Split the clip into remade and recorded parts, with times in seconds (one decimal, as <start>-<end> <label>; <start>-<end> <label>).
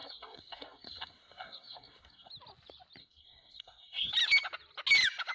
0.0-2.3 remade; 2.3-3.0 recorded; 3.0-4.1 remade; 4.1-5.3 recorded